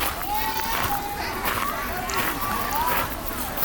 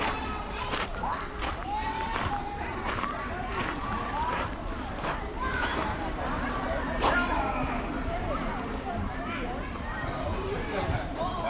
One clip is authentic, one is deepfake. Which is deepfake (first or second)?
second